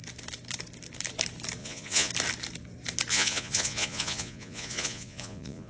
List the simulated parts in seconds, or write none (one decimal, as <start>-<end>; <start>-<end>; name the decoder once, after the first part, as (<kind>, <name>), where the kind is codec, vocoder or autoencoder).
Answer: 1.6-2.1 (vocoder, Vocos); 3.1-5.7